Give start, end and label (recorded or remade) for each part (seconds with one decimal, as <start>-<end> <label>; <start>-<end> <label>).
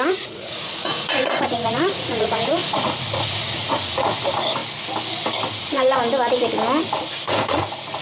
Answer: 0.0-4.6 remade; 4.6-5.6 recorded; 5.6-6.0 remade; 6.0-7.1 recorded; 7.1-8.0 remade